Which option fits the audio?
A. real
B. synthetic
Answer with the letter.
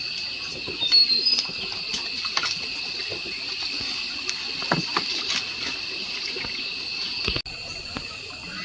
A